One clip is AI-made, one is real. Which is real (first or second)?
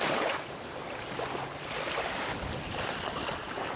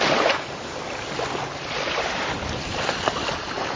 first